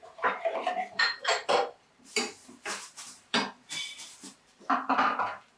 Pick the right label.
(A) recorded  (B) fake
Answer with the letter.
B